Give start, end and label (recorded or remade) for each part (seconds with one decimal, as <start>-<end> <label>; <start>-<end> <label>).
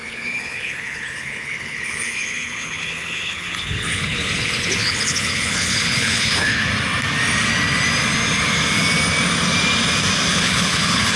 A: 0.0-6.7 remade; 6.7-10.3 recorded; 10.3-11.2 remade